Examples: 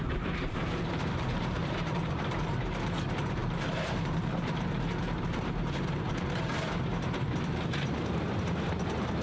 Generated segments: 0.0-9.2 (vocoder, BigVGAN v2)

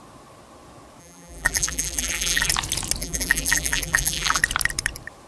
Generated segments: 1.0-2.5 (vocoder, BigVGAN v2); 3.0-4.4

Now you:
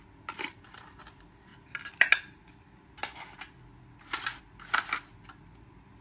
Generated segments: 0.5-1.0 (vocoder, BigVGAN v2)

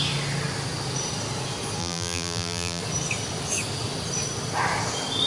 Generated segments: 1.8-2.8 (vocoder, BigVGAN v2)